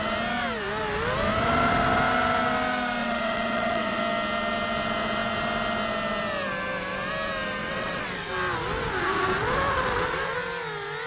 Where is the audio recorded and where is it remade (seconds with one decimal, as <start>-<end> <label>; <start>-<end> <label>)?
0.0-3.0 recorded; 3.0-4.0 remade; 4.0-7.6 recorded; 7.6-8.3 remade; 8.3-11.1 recorded